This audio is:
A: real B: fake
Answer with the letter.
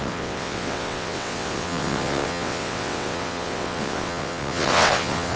B